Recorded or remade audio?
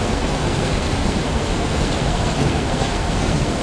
remade